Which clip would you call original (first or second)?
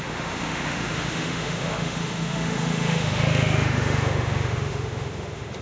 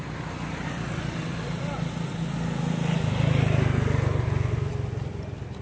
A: second